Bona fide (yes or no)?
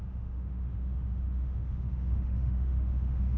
no